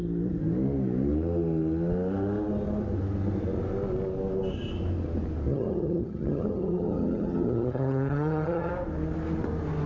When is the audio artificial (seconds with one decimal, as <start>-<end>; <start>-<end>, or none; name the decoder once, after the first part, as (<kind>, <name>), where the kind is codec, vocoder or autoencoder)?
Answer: 5.5-8.7 (vocoder, HiFi-GAN)